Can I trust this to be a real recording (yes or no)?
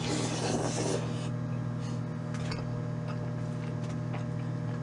yes